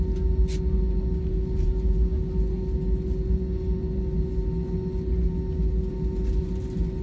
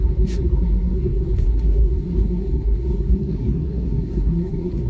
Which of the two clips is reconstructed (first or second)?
second